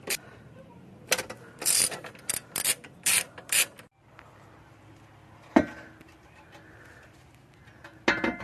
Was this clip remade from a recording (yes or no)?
no